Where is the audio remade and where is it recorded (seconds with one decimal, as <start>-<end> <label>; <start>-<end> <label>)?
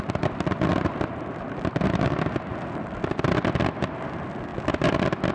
0.0-5.3 recorded